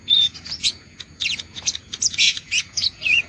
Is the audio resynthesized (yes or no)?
yes